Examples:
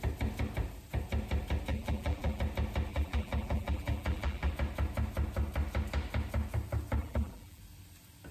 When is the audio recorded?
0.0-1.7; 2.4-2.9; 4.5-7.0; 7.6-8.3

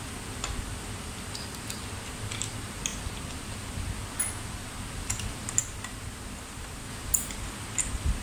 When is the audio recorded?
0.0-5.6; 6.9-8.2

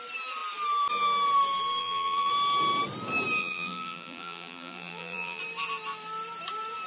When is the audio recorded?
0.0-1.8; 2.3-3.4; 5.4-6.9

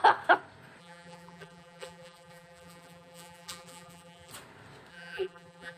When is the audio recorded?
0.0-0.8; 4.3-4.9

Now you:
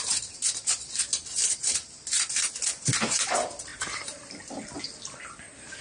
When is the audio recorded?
0.0-3.7; 4.8-5.8